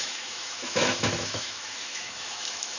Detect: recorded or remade remade